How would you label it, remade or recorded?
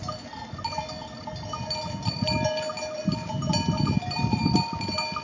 recorded